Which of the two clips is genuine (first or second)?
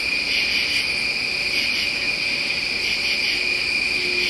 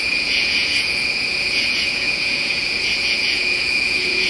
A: first